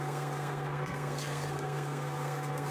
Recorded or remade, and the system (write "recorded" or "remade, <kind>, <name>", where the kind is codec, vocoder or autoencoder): remade, codec, SNAC